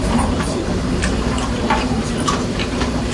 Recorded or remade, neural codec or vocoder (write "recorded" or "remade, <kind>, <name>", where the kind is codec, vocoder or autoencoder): remade, vocoder, BigVGAN v2